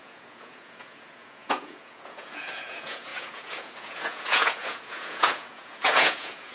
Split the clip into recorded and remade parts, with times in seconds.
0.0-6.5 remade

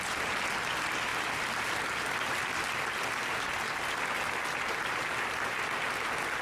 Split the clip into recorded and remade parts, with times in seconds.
0.0-6.4 recorded